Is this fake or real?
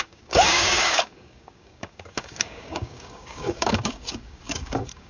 fake